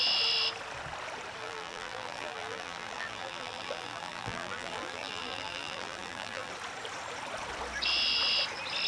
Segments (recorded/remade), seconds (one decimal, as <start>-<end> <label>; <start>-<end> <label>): 0.0-1.4 recorded; 1.4-6.5 remade; 6.5-8.9 recorded